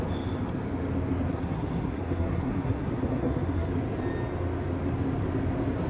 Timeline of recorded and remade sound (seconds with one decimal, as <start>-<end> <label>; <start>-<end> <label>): 0.0-1.3 recorded; 1.3-3.7 remade; 3.7-5.9 recorded